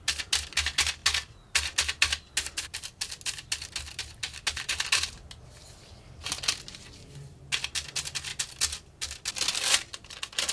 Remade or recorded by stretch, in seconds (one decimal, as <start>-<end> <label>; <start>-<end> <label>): 0.0-10.5 recorded